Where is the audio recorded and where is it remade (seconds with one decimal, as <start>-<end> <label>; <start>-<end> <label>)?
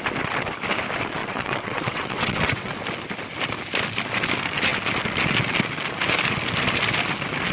0.0-1.2 recorded; 1.2-2.7 remade; 2.7-7.5 recorded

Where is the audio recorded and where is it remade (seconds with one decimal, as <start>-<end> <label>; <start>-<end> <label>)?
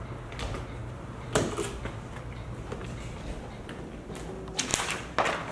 0.0-5.5 recorded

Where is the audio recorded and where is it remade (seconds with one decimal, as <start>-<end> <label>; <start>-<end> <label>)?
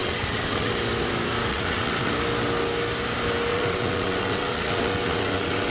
0.0-0.7 remade; 0.7-1.5 recorded; 1.5-2.1 remade; 2.1-3.5 recorded; 3.5-5.7 remade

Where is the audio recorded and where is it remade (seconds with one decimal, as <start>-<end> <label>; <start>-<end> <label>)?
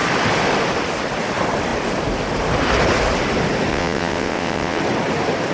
0.0-3.7 recorded; 3.7-4.8 remade; 4.8-5.5 recorded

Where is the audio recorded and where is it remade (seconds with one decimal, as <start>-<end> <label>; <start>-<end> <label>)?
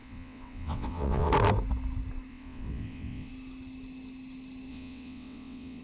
0.0-1.3 remade; 1.3-2.3 recorded; 2.3-3.3 remade; 3.3-4.7 recorded; 4.7-5.8 remade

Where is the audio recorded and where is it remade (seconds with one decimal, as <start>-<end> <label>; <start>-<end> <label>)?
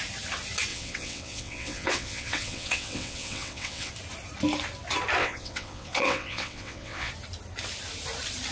0.0-0.7 recorded; 0.7-3.9 remade; 3.9-5.2 recorded; 5.2-7.1 remade; 7.1-8.5 recorded